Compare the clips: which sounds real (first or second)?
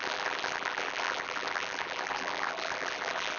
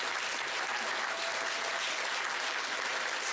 second